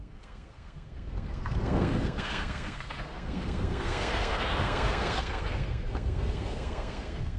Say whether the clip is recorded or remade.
remade